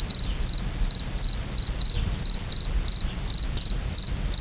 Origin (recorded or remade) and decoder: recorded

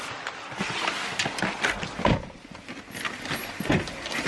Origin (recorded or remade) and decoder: recorded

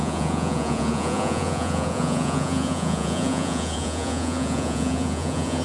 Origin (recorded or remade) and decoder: remade, vocoder, Vocos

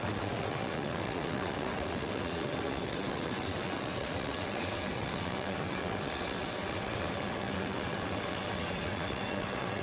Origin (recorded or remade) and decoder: remade, vocoder, WaveNeXt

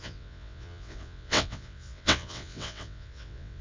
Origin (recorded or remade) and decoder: remade, vocoder, WaveNeXt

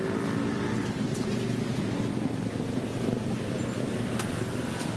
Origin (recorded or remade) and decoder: recorded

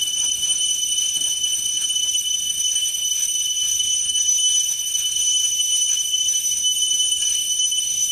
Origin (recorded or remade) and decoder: remade, autoencoder, DAC-VAE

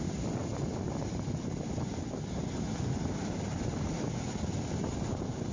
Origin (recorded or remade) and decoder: recorded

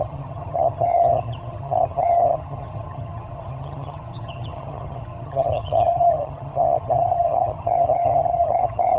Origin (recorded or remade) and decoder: remade, vocoder, HiFi-GAN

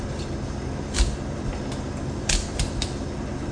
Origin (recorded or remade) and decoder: recorded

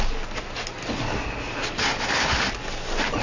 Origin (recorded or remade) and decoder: recorded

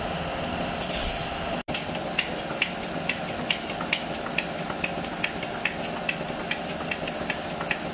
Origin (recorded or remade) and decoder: recorded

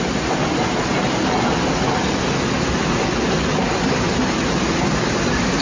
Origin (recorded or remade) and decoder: recorded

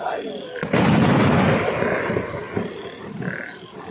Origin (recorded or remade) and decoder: recorded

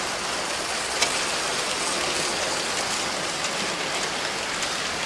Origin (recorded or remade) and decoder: recorded